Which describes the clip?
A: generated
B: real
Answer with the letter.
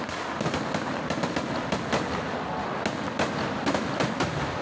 B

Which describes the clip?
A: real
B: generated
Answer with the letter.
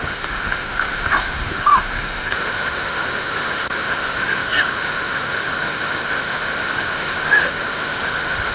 B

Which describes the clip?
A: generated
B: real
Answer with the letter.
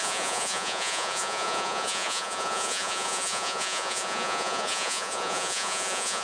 A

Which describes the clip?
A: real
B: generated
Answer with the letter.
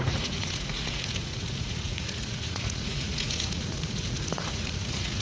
B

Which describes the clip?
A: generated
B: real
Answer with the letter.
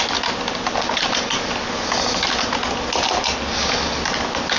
B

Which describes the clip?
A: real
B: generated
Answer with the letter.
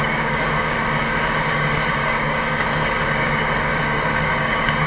B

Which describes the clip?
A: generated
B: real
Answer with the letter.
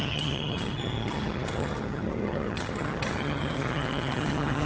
A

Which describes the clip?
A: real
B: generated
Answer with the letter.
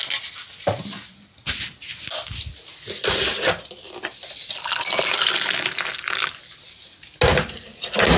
A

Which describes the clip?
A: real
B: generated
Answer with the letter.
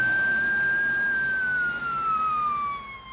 A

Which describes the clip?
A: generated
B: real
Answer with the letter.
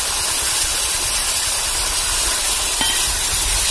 B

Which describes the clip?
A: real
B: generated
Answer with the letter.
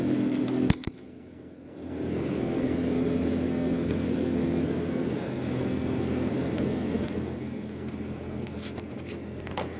B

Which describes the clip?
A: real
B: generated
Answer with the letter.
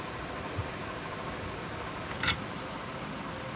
A